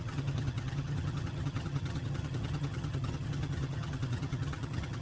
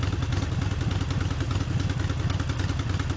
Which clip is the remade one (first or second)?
first